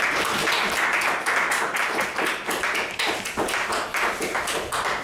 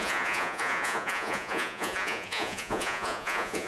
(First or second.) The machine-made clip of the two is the second